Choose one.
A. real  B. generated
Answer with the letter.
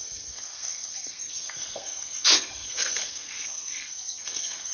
B